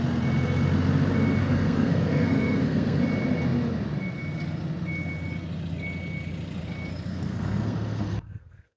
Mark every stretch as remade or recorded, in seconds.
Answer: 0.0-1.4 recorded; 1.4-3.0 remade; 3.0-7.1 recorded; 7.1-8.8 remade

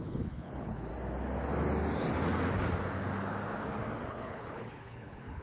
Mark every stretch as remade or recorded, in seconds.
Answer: 0.0-0.9 remade; 0.9-4.1 recorded; 4.1-5.4 remade

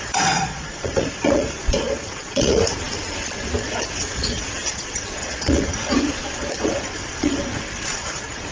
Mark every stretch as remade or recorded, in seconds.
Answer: 0.0-2.6 remade; 2.6-3.6 recorded; 3.6-8.5 remade

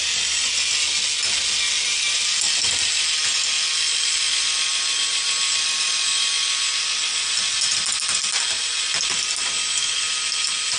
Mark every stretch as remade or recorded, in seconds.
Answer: 0.0-10.8 recorded

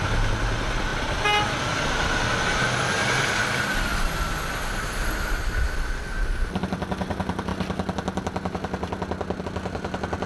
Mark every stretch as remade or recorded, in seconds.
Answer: 0.0-10.3 recorded

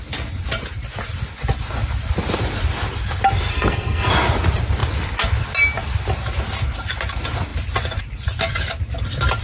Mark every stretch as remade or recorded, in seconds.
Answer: 0.0-3.5 recorded; 3.5-4.1 remade; 4.1-9.4 recorded

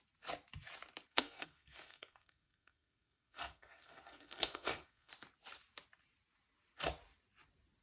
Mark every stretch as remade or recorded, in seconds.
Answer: 0.0-1.1 recorded; 1.1-5.1 remade; 5.1-7.8 recorded

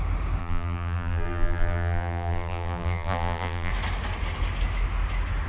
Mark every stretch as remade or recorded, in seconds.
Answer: 0.0-0.4 recorded; 0.4-3.7 remade; 3.7-5.5 recorded